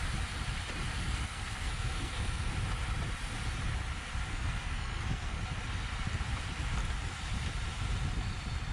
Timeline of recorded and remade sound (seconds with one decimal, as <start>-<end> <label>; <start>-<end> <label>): 0.0-0.9 recorded; 0.9-2.5 remade; 2.5-4.3 recorded; 4.3-5.4 remade; 5.4-8.7 recorded